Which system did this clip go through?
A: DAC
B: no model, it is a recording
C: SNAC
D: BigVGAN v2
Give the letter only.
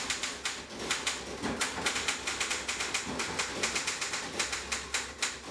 D